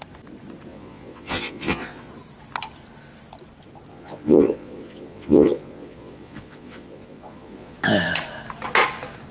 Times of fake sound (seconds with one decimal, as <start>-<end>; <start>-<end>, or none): 0.7-2.1; 3.9-7.8